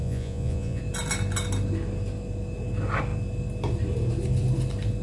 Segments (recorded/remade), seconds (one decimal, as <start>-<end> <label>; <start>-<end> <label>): 0.0-0.8 remade; 0.8-5.0 recorded